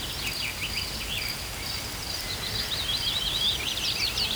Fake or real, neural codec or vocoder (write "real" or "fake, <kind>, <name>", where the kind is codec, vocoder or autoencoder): real